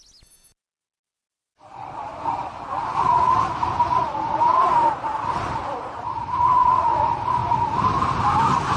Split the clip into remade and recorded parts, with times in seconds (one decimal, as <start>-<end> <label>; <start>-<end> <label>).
0.0-4.7 recorded; 4.7-6.7 remade; 6.7-7.4 recorded; 7.4-8.2 remade; 8.2-8.8 recorded